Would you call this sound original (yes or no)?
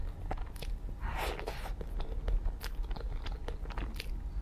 yes